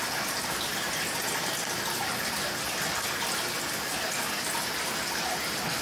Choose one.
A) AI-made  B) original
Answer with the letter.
B